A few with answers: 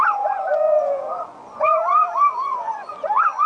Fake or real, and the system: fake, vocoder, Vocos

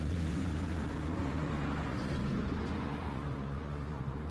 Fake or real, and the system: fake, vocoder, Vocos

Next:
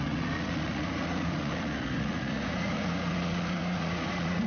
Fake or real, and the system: fake, vocoder, Vocos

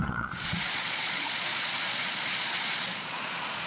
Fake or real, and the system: fake, vocoder, Vocos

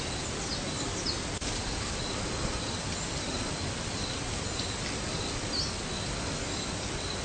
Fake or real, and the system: real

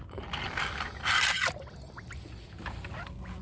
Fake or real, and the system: real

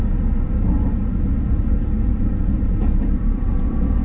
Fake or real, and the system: fake, vocoder, Vocos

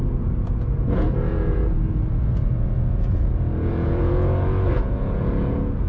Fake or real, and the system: fake, vocoder, Vocos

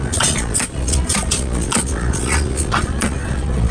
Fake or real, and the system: fake, vocoder, Vocos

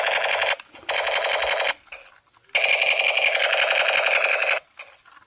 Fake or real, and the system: real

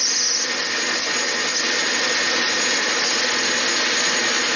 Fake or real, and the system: real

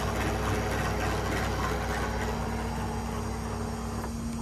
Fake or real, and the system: real